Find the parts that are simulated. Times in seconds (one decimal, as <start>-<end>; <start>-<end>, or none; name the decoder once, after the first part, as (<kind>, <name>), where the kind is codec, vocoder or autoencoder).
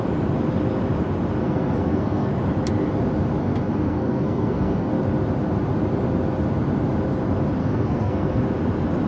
1.4-2.3 (codec, SNAC); 3.4-4.9; 7.6-8.4